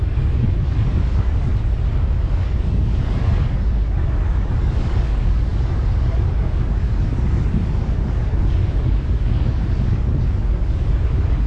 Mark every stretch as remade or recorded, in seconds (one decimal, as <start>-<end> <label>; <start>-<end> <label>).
0.0-1.5 remade; 1.5-2.2 recorded; 2.2-11.5 remade